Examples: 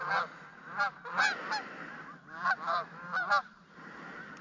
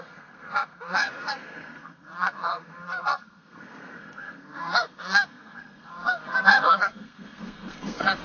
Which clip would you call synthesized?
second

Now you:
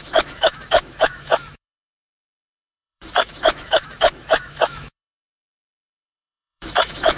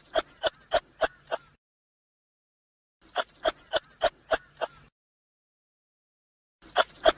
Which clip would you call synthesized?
first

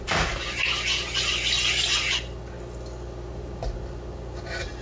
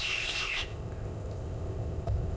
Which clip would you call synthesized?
second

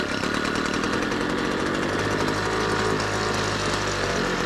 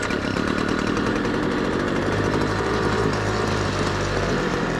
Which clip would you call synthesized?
second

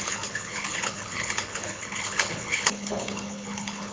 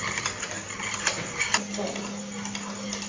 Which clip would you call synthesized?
first